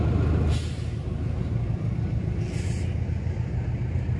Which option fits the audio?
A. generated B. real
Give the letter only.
B